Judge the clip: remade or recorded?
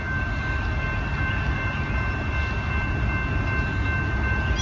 recorded